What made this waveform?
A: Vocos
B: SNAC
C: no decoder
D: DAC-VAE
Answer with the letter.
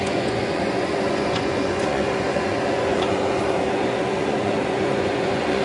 A